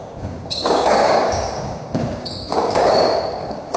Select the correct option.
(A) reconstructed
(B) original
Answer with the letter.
A